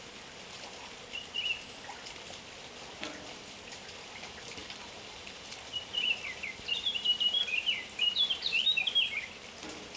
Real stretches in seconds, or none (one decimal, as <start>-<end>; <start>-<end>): 0.0-4.6; 8.6-10.0